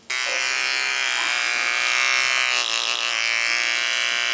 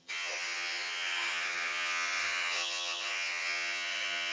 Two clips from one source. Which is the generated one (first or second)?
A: second